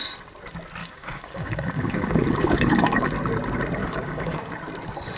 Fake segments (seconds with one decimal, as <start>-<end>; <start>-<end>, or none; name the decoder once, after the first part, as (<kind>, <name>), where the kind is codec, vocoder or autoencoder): 0.8-3.1 (codec, DAC); 3.8-4.5